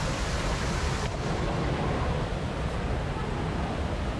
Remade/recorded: remade